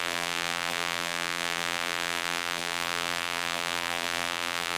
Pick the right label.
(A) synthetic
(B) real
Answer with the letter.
A